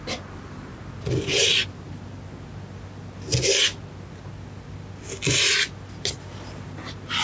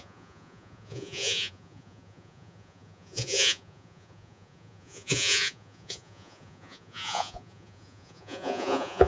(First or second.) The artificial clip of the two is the second